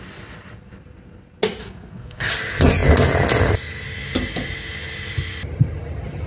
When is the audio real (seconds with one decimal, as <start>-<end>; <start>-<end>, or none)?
0.0-1.6; 2.3-6.3